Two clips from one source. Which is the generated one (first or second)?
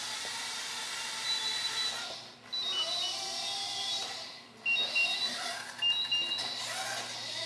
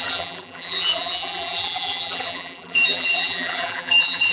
second